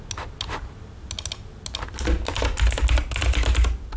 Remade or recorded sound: recorded